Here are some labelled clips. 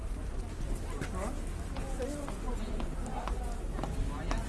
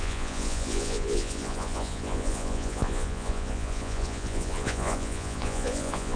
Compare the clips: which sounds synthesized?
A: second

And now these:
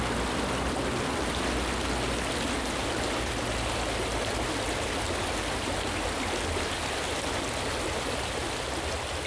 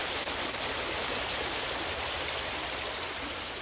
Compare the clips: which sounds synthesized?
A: second